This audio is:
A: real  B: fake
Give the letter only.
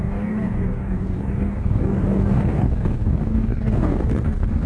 B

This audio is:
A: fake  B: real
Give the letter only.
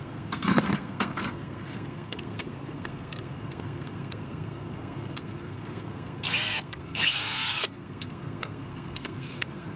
A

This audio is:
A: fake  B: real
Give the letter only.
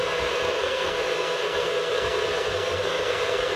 A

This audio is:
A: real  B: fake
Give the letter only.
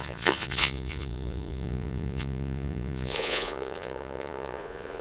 B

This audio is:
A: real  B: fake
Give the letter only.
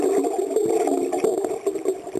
A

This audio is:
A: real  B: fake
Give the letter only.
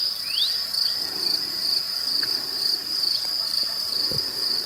B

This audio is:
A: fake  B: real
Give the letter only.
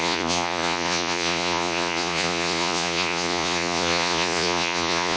A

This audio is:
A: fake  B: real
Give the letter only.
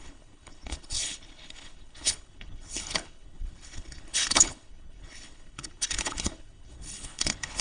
A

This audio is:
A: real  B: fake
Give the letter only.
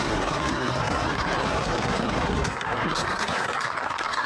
B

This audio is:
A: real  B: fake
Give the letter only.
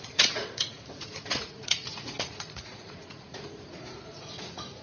B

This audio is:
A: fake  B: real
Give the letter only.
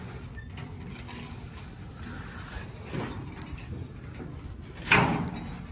B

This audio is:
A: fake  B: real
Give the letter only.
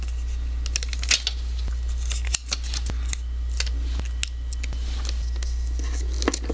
B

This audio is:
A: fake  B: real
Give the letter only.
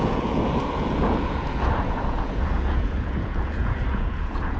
A